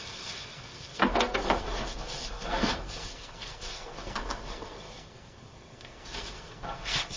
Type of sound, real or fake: fake